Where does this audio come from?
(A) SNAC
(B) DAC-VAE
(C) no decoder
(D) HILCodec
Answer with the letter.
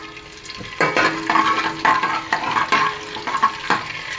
C